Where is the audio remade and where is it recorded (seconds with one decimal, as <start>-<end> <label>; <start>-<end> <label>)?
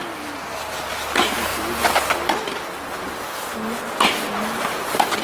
0.0-5.2 recorded